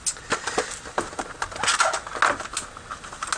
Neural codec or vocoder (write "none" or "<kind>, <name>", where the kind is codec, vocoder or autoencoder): none